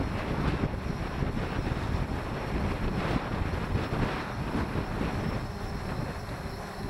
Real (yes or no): yes